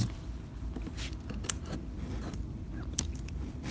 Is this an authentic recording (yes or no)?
yes